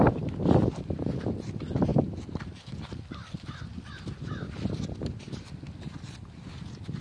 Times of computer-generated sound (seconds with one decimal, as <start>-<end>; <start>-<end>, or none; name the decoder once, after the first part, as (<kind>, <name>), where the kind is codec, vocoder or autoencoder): none